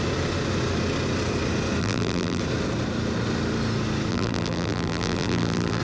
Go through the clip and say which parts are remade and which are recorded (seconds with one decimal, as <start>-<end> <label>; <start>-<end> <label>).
0.0-1.8 recorded; 1.8-2.4 remade; 2.4-4.1 recorded; 4.1-5.8 remade